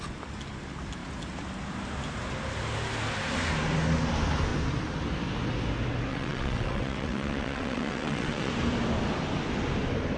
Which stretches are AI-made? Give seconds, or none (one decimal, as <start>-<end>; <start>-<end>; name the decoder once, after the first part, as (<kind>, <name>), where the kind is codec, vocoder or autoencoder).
6.1-8.5 (vocoder, WaveNeXt)